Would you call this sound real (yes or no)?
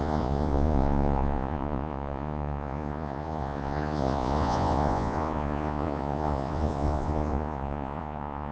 no